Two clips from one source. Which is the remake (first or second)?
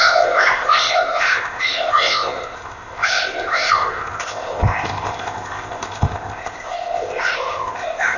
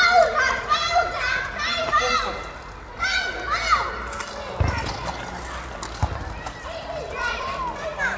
first